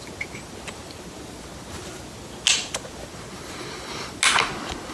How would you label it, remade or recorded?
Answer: recorded